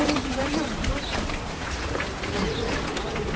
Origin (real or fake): fake